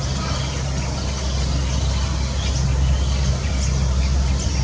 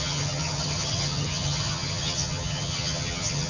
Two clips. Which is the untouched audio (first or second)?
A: first